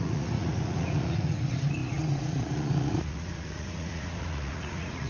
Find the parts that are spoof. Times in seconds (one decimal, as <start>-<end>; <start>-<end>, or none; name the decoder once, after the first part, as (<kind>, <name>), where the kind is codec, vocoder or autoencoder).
0.0-5.1 (vocoder, Vocos)